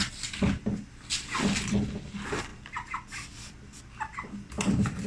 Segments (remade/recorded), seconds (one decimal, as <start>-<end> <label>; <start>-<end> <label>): 0.0-5.1 recorded